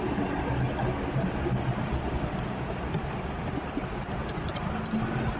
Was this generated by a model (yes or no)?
no